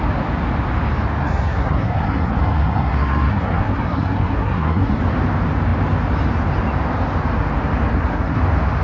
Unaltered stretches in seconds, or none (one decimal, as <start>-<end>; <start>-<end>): 0.0-1.2; 5.0-7.9; 8.4-8.8